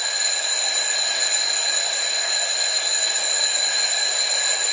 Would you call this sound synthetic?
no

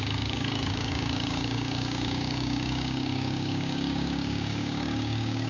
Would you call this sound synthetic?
yes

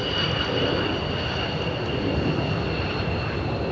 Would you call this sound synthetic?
no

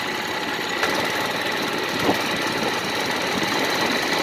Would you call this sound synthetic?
no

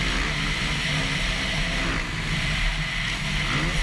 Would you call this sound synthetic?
no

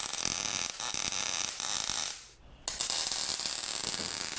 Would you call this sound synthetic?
no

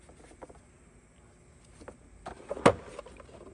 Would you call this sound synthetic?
no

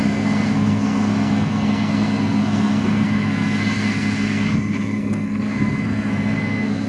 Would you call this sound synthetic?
yes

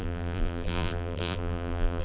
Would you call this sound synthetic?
yes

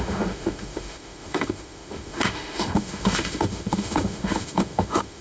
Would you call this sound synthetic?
yes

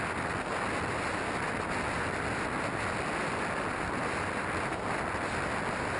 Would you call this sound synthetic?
no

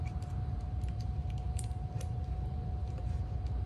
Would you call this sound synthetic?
yes